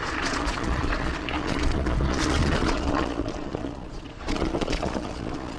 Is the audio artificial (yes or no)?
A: yes